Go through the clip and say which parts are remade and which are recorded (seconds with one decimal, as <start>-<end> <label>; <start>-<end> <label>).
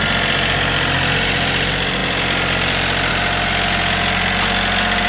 0.0-5.1 recorded